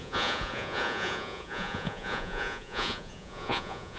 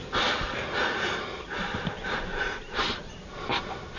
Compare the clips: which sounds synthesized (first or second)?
first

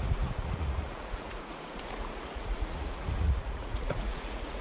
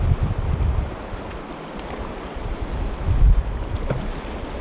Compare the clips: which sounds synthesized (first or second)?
first